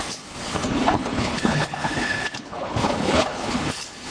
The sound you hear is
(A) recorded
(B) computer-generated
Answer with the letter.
B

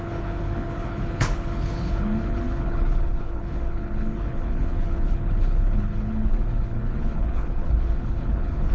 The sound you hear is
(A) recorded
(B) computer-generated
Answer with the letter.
B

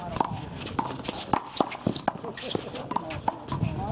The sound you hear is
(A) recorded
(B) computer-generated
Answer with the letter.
A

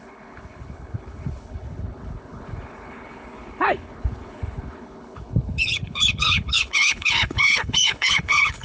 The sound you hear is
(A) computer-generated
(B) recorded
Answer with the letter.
A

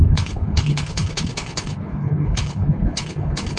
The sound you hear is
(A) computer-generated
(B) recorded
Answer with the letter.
A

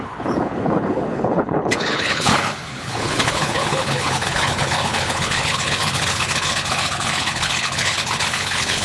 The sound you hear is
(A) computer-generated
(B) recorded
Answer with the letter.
A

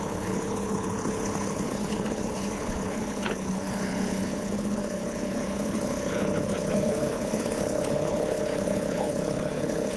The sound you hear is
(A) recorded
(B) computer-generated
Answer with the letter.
B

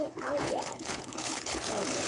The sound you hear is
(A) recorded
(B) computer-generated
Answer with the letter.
B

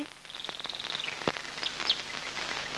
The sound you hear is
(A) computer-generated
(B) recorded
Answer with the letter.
B